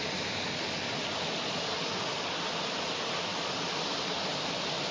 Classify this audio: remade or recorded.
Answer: recorded